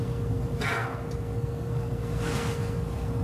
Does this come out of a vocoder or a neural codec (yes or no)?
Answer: yes